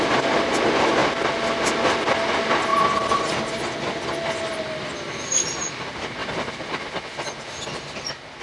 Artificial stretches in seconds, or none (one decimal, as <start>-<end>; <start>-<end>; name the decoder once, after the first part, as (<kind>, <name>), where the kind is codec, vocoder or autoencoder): none